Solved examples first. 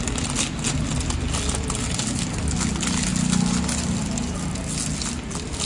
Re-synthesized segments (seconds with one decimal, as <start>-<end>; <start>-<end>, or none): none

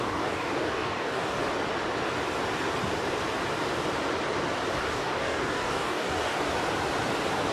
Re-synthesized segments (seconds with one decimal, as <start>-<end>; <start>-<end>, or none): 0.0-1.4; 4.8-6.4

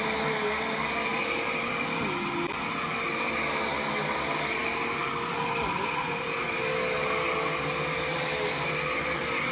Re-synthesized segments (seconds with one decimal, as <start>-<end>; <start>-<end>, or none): none

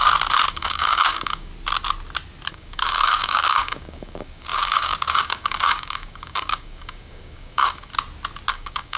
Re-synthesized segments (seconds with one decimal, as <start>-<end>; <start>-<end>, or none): 0.5-1.5; 2.5-7.9; 8.5-9.0

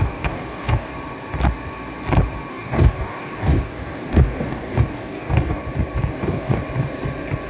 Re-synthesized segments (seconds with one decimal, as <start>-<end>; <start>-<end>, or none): 0.0-0.9; 2.5-5.6; 6.1-6.6

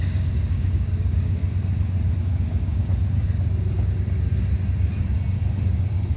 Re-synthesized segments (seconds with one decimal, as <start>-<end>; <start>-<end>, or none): 0.0-1.4; 2.2-2.9

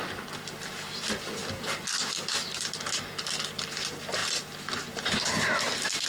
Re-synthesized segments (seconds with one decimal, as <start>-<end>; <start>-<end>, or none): none